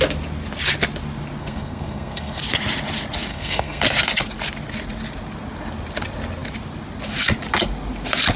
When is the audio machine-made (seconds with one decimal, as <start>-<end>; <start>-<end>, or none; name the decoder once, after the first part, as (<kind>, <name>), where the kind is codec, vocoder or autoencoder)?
1.4-2.4 (codec, SNAC); 3.3-3.8